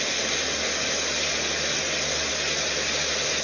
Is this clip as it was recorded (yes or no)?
yes